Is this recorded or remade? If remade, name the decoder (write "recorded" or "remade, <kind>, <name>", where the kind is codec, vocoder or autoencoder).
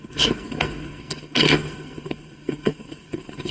remade, codec, SNAC